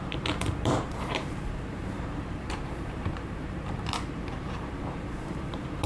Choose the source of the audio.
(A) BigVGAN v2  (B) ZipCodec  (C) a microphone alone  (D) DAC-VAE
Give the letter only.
A